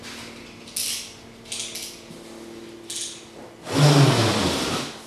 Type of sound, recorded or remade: recorded